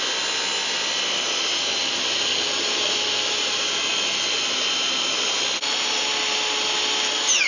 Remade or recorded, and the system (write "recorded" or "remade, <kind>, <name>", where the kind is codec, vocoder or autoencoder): recorded